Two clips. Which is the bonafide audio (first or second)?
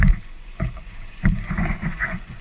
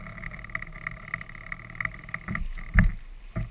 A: second